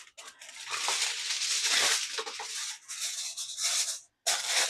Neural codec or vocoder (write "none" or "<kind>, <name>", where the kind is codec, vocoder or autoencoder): none